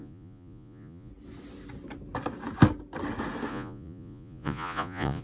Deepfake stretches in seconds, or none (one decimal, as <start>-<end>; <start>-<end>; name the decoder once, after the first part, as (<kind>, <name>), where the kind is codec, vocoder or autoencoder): 0.0-1.1 (vocoder, Vocos); 3.5-5.2